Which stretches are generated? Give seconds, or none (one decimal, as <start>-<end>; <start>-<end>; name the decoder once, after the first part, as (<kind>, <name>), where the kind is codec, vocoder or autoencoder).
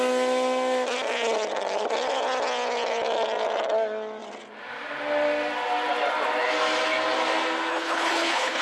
7.7-8.6 (codec, HILCodec)